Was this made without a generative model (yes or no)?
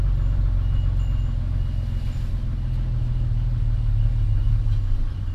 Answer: yes